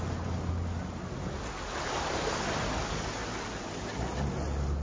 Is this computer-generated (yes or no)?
no